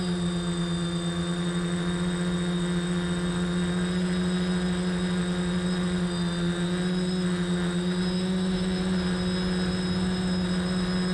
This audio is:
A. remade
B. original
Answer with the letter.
B